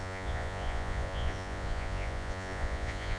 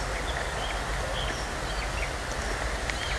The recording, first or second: second